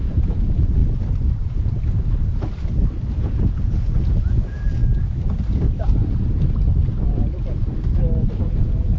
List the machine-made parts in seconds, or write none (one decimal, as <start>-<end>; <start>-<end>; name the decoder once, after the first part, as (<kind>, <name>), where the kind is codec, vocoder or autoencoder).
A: 0.0-0.8 (vocoder, Vocos); 3.2-4.8; 8.4-9.0